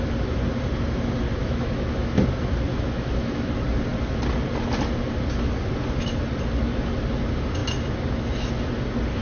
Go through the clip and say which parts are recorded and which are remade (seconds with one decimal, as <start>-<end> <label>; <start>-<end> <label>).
0.0-1.4 recorded; 1.4-2.1 remade; 2.1-2.7 recorded; 2.7-3.5 remade; 3.5-9.2 recorded